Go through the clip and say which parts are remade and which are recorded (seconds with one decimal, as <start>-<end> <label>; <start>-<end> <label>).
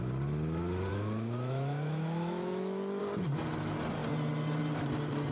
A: 0.0-0.9 recorded; 0.9-3.0 remade; 3.0-5.3 recorded